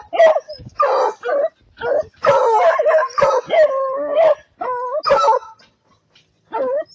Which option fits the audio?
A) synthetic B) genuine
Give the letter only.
B